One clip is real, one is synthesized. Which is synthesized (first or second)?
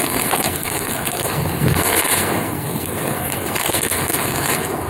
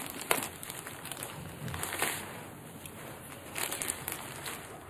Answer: first